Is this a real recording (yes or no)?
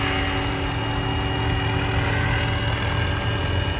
yes